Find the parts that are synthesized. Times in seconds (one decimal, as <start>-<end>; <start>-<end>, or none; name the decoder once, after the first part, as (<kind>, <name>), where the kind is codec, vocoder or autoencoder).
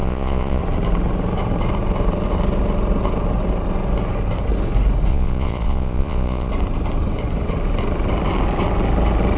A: 0.0-0.6 (vocoder, Vocos); 5.1-6.5